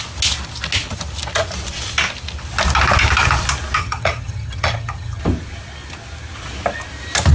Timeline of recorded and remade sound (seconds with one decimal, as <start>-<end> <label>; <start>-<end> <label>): 0.0-3.8 recorded; 3.8-5.2 remade; 5.2-7.3 recorded